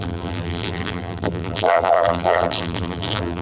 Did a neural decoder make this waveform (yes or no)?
yes